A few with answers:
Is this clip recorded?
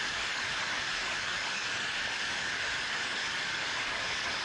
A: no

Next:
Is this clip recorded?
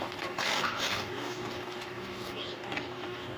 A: no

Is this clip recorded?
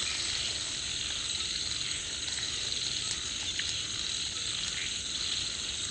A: yes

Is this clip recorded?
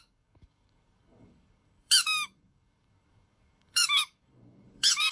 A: no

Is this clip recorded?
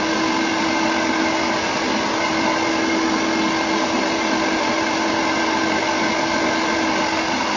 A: yes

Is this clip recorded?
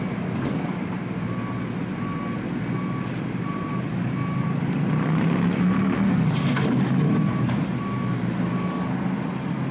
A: yes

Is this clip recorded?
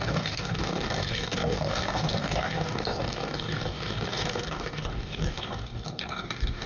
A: no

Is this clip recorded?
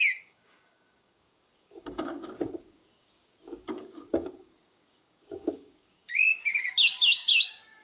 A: no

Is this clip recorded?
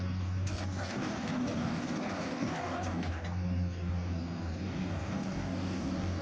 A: no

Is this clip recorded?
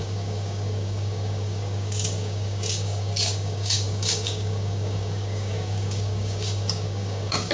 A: no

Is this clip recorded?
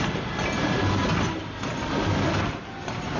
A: yes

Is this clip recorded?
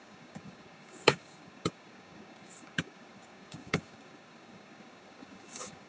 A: no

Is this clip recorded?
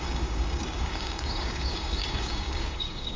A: no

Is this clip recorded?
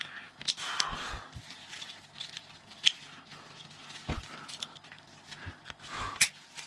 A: yes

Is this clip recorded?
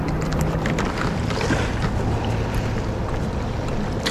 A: yes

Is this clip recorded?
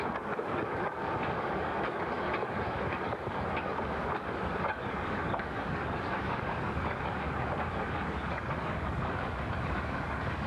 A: no